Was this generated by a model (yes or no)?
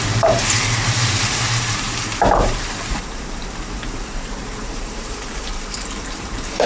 yes